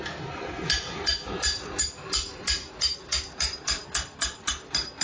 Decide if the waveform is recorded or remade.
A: recorded